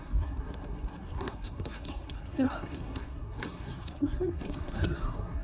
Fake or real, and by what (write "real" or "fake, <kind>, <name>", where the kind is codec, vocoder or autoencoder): fake, codec, SNAC